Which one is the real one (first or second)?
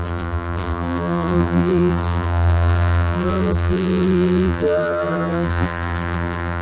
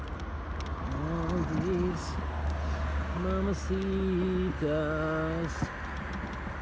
second